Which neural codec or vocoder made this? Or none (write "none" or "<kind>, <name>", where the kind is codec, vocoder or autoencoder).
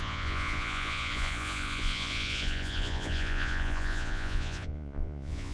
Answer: vocoder, Vocos